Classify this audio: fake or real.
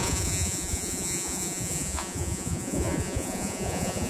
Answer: fake